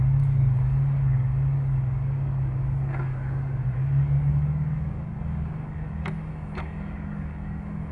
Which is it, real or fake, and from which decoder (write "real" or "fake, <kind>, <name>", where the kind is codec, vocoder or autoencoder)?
fake, codec, DAC